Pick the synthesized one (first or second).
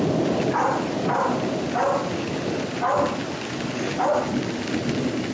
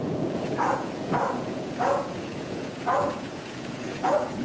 second